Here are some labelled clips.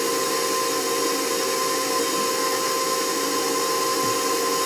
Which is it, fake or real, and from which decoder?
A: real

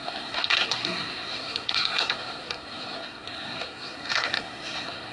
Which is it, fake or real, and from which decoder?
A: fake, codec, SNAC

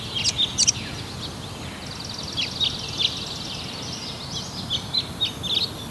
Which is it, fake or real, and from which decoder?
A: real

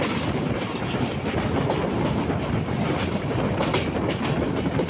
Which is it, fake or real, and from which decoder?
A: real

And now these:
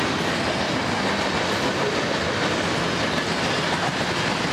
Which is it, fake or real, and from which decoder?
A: real